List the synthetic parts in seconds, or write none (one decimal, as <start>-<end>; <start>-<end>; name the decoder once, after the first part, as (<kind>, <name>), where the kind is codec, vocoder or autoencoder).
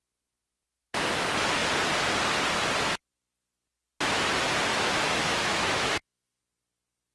4.7-6.4 (autoencoder, DAC-VAE)